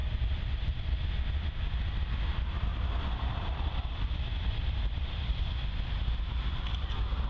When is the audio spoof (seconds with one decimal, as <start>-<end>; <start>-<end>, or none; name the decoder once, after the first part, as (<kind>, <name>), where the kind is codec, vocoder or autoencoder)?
0.0-0.9 (vocoder, BigVGAN v2); 2.7-6.0